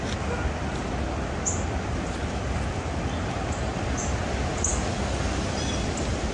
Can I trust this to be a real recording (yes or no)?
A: yes